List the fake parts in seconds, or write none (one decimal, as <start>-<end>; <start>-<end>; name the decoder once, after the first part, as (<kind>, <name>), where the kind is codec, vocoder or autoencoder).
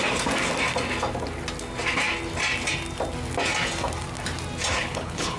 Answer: 4.8-5.4 (codec, HILCodec)